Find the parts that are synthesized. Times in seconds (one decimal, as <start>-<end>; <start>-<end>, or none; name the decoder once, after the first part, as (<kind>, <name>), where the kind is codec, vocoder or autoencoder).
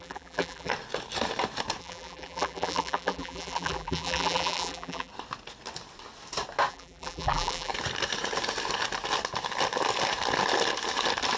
0.0-0.7 (vocoder, BigVGAN v2); 1.8-5.1; 6.7-7.7